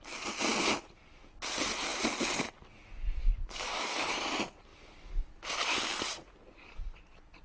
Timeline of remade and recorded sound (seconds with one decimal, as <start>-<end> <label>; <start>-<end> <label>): 0.0-3.2 recorded; 3.2-4.1 remade; 4.1-7.4 recorded